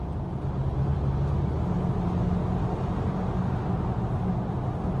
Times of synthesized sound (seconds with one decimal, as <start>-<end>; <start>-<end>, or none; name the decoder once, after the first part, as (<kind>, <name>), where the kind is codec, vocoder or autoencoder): none